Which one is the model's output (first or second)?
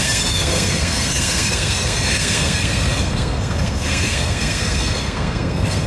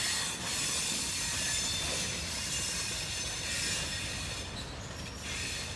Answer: first